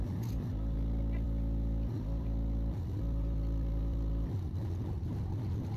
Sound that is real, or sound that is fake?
real